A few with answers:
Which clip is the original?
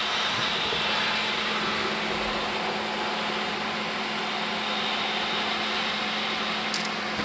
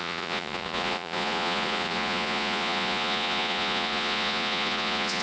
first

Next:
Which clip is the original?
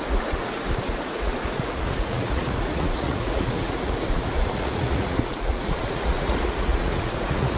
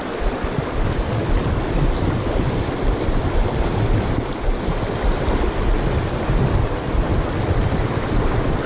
second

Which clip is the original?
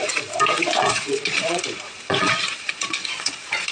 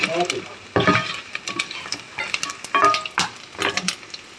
second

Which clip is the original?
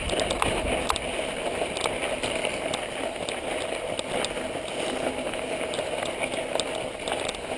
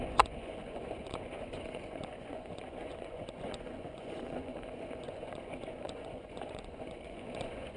first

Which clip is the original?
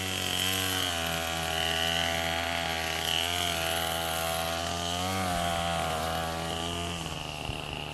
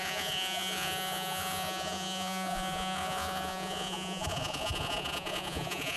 first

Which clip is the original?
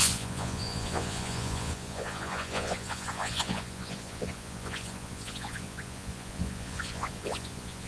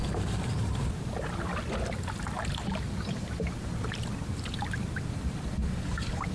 second